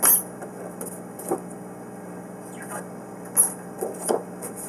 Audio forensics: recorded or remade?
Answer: recorded